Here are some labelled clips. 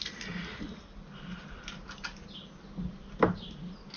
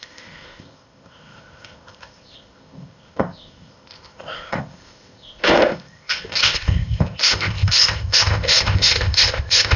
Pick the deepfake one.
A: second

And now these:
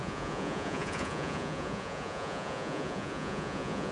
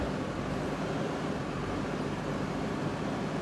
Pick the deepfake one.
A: first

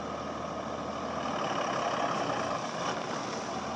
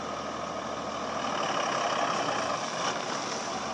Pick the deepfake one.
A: first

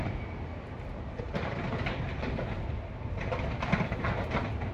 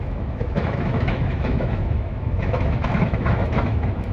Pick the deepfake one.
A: second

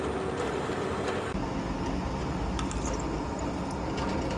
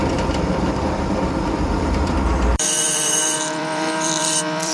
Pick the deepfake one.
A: second